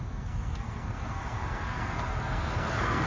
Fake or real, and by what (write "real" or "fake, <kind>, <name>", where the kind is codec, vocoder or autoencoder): fake, codec, SNAC